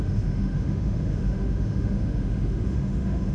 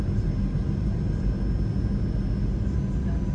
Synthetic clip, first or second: first